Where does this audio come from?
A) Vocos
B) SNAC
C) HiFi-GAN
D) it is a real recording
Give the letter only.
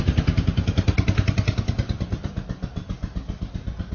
D